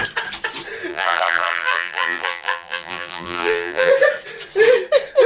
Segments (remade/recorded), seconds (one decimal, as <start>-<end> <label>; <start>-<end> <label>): 0.0-0.9 recorded; 0.9-3.9 remade; 3.9-5.3 recorded